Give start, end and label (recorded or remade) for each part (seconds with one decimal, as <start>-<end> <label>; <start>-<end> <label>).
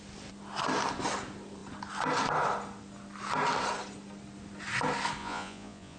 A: 0.0-5.2 recorded; 5.2-6.0 remade